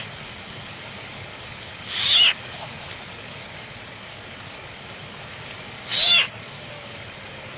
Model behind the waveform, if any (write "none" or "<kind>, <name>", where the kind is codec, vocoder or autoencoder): codec, DAC